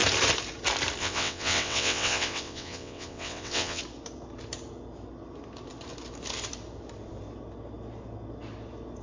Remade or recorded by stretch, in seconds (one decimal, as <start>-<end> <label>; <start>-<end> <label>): 0.0-1.0 recorded; 1.0-3.8 remade; 3.8-9.0 recorded

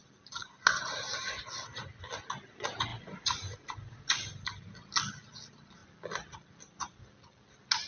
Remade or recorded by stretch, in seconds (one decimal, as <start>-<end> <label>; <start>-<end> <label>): 0.0-2.9 recorded; 2.9-4.3 remade; 4.3-7.9 recorded

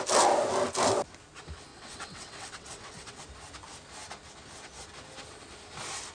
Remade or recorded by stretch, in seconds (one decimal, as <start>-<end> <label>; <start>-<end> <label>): 0.0-1.7 recorded; 1.7-3.2 remade; 3.2-6.1 recorded